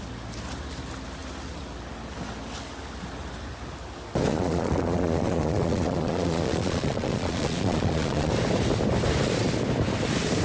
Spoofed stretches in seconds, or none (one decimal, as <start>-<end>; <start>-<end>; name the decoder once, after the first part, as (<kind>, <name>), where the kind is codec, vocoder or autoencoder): 4.3-8.3 (vocoder, Vocos)